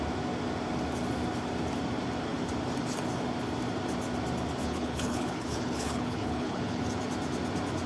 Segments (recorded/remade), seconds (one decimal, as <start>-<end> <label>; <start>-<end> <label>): 0.0-4.6 recorded; 4.6-6.8 remade; 6.8-7.9 recorded